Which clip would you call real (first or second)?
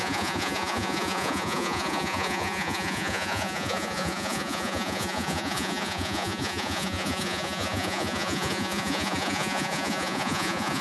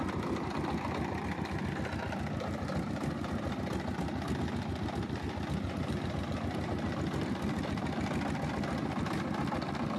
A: second